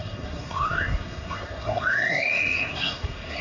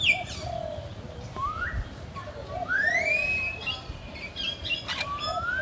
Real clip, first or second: second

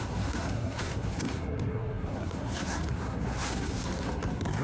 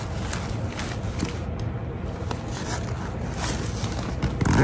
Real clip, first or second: second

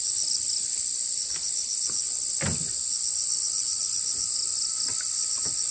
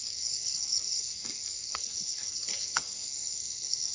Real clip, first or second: first